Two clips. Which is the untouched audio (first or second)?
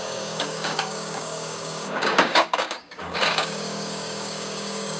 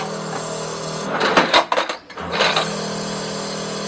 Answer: second